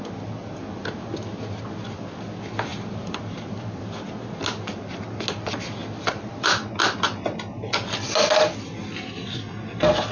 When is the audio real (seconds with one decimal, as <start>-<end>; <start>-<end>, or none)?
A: 0.0-2.7; 3.2-5.8; 6.7-10.1